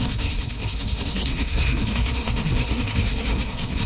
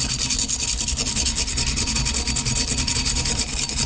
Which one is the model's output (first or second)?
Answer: first